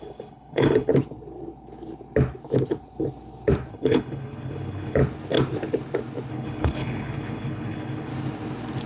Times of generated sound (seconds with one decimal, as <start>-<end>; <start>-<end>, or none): 0.0-0.9; 3.7-5.0; 6.3-8.1

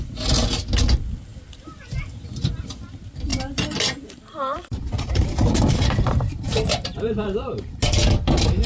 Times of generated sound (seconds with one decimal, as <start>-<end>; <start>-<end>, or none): 3.3-7.8